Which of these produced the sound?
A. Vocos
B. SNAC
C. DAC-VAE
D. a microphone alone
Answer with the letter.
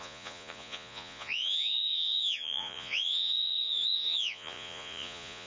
A